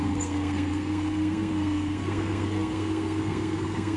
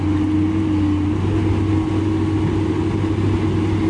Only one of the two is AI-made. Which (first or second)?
first